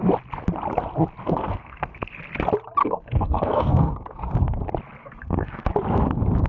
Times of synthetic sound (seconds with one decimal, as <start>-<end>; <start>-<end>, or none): 1.2-1.9; 2.8-4.2; 5.0-5.7